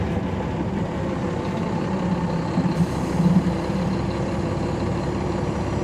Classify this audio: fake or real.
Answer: real